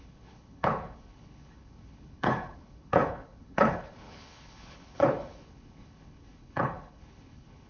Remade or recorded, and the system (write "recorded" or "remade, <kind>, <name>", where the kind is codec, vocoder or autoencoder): remade, codec, HILCodec